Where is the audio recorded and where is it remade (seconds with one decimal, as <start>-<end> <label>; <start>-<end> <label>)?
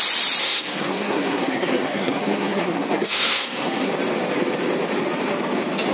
0.0-0.4 recorded; 0.4-3.9 remade; 3.9-5.9 recorded